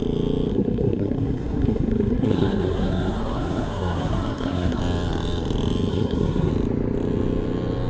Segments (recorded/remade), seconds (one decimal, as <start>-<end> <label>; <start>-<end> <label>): 0.0-0.5 recorded; 0.5-4.8 remade; 4.8-5.9 recorded; 5.9-6.5 remade; 6.5-7.9 recorded